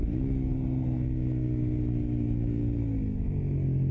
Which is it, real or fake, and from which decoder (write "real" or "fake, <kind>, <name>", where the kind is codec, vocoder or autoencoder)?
real